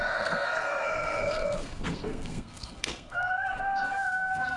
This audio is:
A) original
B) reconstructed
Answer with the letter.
B